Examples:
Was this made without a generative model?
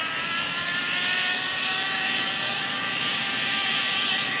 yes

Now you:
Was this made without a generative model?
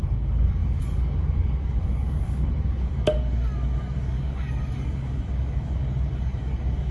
no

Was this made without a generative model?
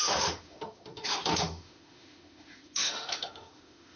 no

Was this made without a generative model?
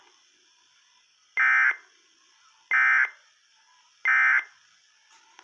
yes